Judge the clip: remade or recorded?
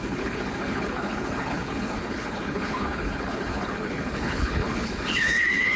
remade